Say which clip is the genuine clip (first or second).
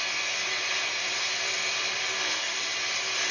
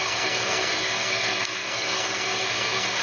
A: first